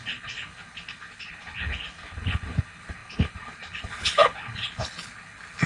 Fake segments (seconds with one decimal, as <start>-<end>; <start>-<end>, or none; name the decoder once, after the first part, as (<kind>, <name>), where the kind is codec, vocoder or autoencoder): 0.0-5.7 (codec, HILCodec)